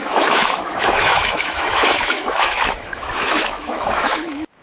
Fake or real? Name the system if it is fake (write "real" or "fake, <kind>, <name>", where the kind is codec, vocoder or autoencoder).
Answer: fake, autoencoder, DAC-VAE